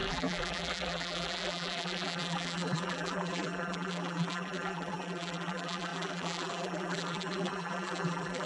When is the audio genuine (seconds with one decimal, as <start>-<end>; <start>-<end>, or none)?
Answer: none